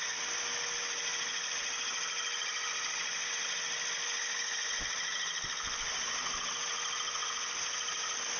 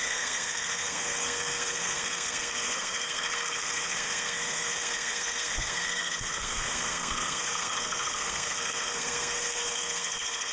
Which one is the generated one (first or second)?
second